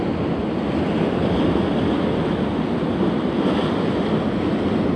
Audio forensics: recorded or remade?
recorded